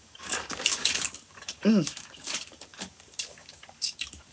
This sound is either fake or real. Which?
fake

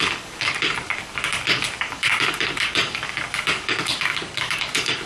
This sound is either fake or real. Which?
fake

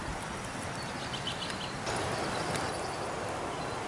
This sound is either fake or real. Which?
real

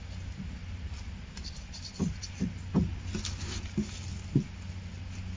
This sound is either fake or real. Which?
real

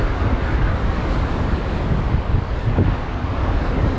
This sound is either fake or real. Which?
fake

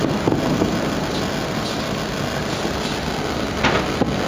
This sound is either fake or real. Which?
real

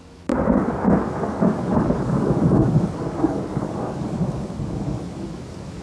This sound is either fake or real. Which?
fake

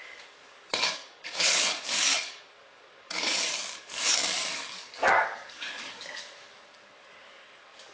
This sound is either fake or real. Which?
fake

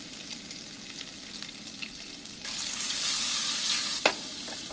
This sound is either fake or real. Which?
real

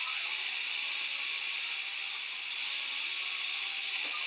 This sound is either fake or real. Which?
real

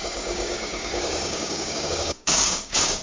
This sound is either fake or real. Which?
fake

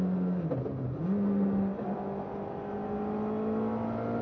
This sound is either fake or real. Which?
real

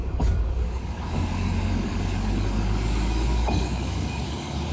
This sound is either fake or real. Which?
fake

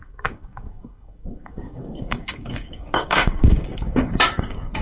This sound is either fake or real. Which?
fake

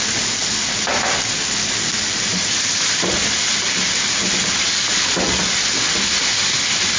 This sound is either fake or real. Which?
real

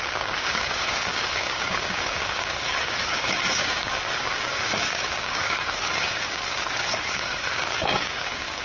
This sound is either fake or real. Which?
fake